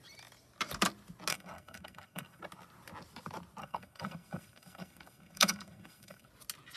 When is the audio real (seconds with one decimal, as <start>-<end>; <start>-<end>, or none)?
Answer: 0.0-1.3; 2.4-3.6; 6.3-6.8